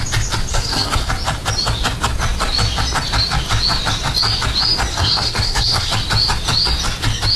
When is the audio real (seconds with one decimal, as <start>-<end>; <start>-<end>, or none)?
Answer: 0.0-0.5; 1.1-4.9; 5.9-7.4